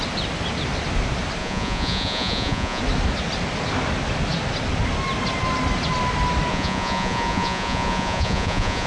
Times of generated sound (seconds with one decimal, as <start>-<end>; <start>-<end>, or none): 1.4-2.8; 6.5-8.9